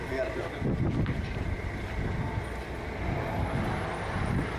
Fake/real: real